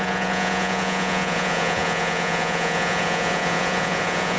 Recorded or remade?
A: remade